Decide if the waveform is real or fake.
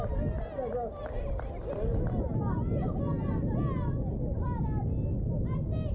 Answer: real